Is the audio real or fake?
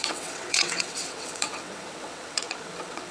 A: fake